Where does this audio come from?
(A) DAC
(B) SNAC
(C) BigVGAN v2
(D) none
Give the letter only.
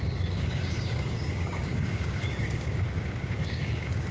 A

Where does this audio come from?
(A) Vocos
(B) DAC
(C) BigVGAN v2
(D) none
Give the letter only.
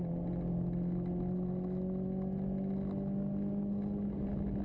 D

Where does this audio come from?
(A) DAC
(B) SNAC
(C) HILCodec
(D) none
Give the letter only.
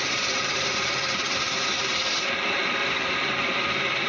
D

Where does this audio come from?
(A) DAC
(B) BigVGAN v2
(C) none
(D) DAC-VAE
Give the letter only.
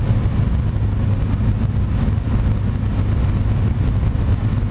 C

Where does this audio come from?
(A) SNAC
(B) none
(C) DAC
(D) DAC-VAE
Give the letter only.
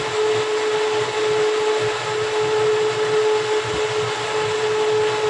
B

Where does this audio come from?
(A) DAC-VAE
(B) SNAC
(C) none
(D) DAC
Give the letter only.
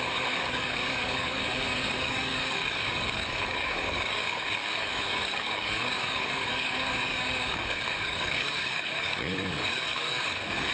D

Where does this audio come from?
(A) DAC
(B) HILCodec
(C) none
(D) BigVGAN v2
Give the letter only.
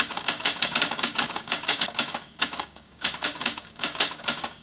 A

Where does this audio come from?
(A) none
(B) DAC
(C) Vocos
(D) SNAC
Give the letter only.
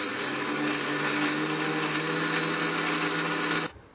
A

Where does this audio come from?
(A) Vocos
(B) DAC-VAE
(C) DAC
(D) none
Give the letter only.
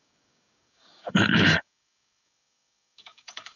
C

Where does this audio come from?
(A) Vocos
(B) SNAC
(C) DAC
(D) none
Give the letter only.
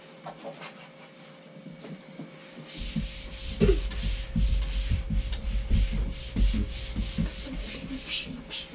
D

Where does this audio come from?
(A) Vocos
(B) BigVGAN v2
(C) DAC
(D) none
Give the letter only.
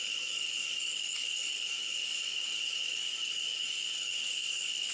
C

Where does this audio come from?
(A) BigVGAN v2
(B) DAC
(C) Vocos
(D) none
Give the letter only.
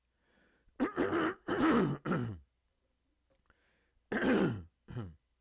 D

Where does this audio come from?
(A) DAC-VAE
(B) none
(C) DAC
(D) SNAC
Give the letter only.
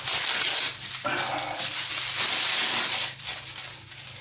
B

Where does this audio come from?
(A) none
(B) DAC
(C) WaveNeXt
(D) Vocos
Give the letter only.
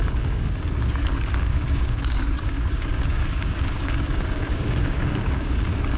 B